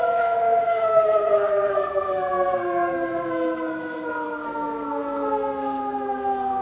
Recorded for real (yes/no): no